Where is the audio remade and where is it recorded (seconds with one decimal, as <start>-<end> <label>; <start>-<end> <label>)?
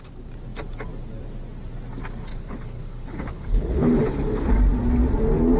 0.0-2.3 recorded; 2.3-4.5 remade; 4.5-5.6 recorded